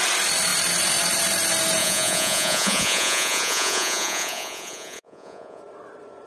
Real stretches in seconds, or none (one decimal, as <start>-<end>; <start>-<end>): 0.0-1.8; 5.6-6.3